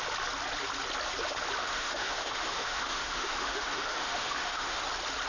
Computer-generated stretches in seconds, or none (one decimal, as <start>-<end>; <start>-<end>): 1.6-4.8